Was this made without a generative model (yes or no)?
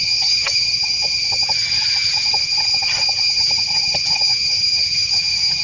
no